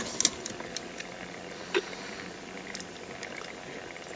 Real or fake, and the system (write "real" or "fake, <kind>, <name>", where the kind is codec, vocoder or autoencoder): real